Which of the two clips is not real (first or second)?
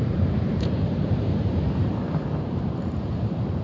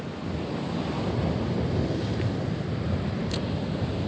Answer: first